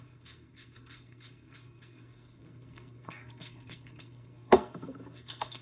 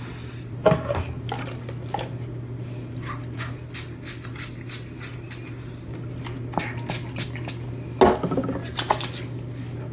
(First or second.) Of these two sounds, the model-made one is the first